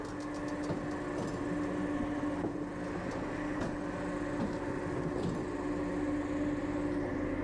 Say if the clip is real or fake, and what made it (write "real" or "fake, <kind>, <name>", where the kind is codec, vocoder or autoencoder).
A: real